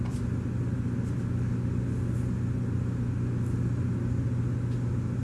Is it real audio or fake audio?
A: real